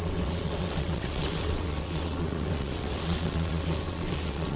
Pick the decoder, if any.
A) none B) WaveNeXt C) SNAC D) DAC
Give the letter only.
B